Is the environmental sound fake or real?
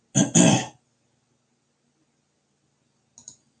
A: real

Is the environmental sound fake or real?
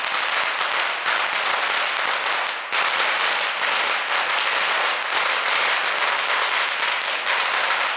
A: real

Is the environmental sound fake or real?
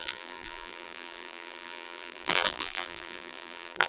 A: fake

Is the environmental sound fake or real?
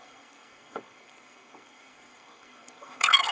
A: fake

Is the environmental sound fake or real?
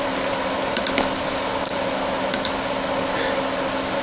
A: real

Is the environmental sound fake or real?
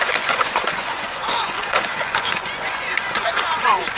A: fake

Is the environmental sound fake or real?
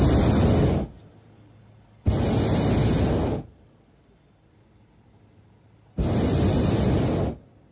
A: real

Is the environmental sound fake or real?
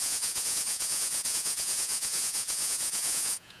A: fake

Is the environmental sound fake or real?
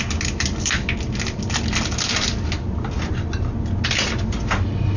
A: real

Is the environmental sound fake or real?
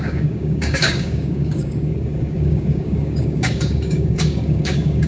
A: fake